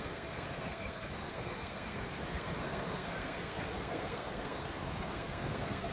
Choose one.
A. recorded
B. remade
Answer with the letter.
B